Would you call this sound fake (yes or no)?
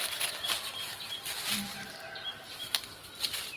no